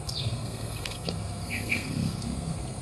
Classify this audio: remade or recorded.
remade